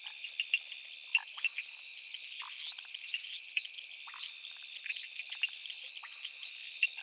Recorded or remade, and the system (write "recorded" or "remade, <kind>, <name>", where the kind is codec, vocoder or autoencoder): recorded